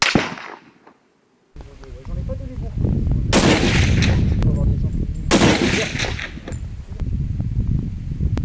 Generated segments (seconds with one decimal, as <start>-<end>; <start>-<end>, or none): none